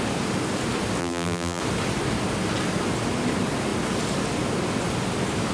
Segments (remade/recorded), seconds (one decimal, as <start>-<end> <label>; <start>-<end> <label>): 0.0-1.0 recorded; 1.0-1.6 remade; 1.6-5.5 recorded